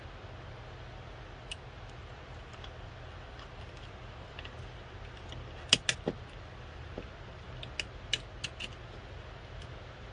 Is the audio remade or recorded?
recorded